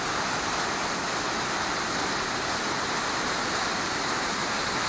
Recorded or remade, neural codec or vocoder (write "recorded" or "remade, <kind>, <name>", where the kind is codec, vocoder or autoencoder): recorded